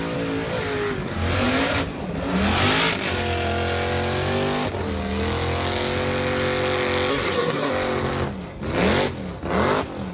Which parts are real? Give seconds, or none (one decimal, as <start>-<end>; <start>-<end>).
0.0-7.1; 7.7-10.1